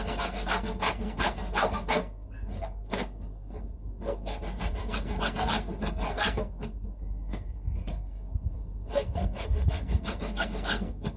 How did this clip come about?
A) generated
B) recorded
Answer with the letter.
A